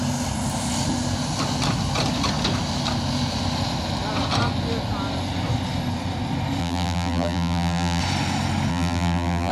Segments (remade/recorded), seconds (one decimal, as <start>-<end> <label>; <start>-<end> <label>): 0.0-6.6 recorded; 6.6-8.0 remade; 8.0-8.7 recorded; 8.7-9.5 remade